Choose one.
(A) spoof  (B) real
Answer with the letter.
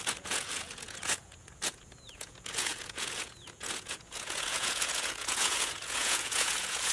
A